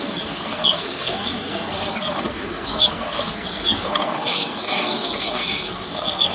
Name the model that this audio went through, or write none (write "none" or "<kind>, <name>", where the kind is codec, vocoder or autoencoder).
codec, SNAC